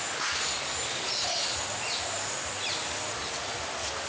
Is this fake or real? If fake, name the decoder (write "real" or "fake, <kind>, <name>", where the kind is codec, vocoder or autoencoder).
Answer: real